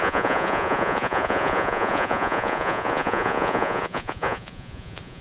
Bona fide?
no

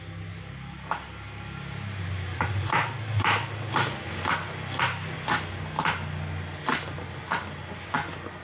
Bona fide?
yes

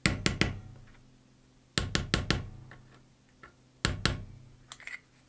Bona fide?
yes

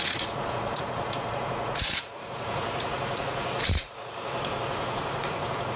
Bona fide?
no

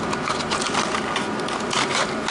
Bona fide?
yes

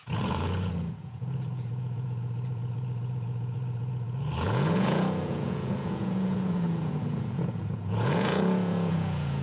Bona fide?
no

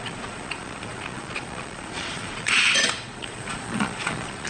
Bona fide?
no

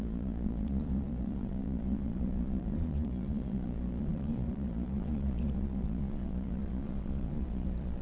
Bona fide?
no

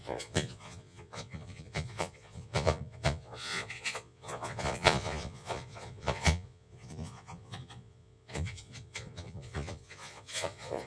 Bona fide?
no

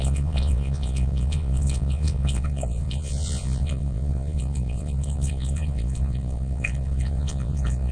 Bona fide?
no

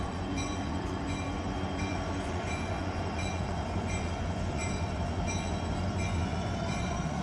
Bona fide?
no